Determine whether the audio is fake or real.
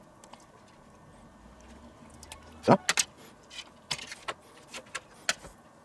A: real